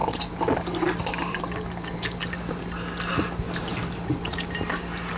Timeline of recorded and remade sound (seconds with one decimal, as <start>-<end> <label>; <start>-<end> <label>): 0.0-3.1 remade; 3.1-3.7 recorded; 3.7-5.2 remade